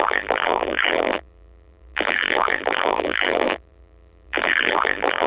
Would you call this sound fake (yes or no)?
yes